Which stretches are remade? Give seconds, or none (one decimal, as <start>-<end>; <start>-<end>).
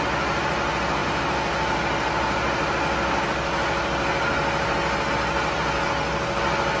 none